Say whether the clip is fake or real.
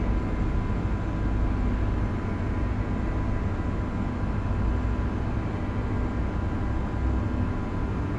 real